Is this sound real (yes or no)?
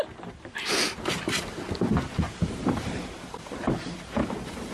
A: yes